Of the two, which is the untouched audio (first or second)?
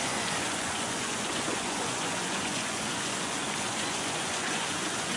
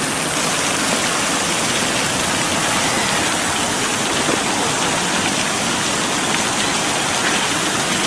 second